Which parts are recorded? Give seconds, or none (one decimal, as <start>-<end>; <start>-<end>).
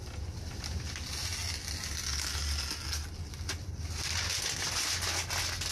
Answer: 0.0-5.7